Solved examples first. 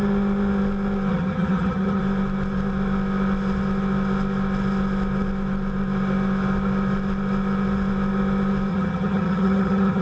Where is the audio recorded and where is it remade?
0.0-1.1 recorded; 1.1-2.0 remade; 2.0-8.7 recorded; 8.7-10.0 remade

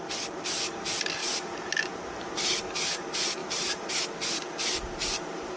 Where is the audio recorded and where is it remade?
0.0-1.2 recorded; 1.2-1.8 remade; 1.8-3.4 recorded; 3.4-3.9 remade; 3.9-5.0 recorded; 5.0-5.6 remade

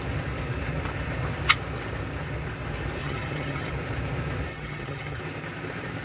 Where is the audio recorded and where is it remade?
0.0-3.0 recorded; 3.0-3.7 remade; 3.7-4.5 recorded; 4.5-5.2 remade; 5.2-6.0 recorded

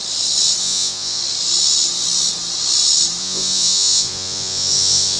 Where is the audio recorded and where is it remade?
0.0-0.6 recorded; 0.6-1.2 remade; 1.2-3.2 recorded; 3.2-5.2 remade

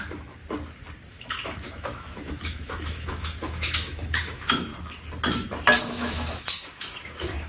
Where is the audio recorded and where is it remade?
0.0-0.4 remade; 0.4-1.1 recorded; 1.1-4.7 remade; 4.7-5.8 recorded; 5.8-7.5 remade